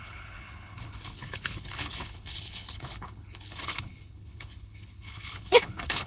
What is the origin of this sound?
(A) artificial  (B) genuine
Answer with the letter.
A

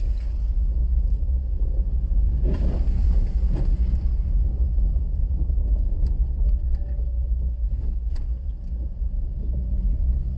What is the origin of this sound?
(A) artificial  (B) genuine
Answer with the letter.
B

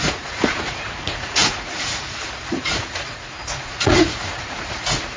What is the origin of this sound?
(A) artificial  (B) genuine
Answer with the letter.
A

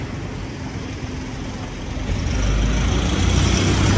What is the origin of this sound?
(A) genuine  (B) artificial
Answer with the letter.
A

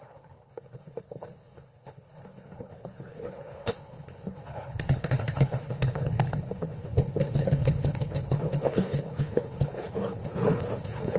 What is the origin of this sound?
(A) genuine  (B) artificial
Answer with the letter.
B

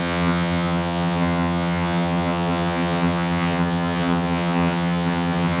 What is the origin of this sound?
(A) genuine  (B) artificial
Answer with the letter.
B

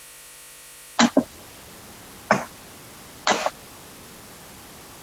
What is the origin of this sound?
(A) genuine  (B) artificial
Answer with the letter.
A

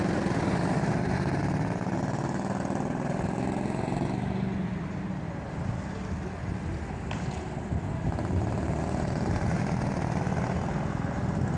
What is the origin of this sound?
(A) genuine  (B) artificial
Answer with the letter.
A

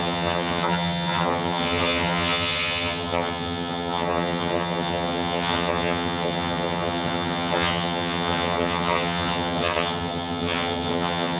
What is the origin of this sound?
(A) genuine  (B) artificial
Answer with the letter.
B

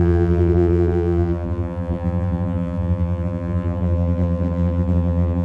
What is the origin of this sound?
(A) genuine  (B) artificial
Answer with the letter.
B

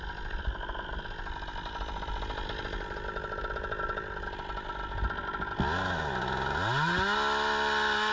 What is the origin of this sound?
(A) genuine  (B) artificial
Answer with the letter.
A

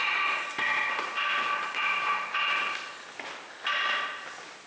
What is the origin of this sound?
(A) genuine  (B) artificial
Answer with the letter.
A